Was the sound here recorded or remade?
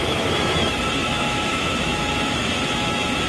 remade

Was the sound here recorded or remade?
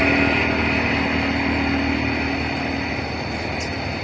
recorded